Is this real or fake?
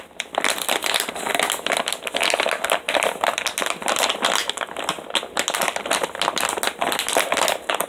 real